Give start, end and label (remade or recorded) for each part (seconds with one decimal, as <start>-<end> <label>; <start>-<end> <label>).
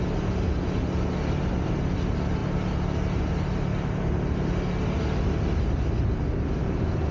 0.0-7.1 recorded